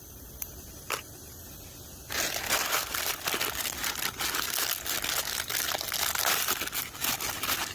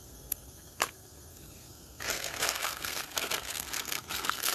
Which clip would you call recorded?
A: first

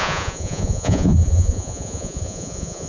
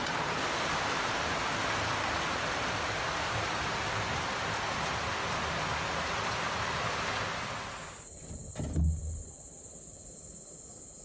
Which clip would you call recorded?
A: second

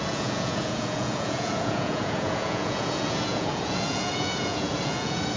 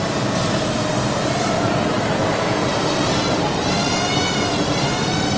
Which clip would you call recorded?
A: second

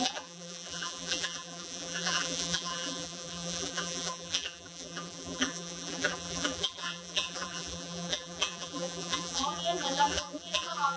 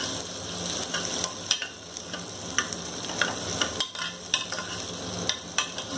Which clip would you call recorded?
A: second